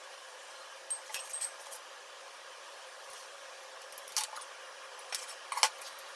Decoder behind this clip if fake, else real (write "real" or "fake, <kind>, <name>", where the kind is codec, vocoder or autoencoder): real